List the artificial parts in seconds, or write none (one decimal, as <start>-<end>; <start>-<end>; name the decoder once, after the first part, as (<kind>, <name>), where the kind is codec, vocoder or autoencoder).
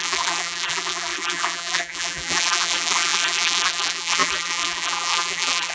0.0-5.7 (vocoder, BigVGAN v2)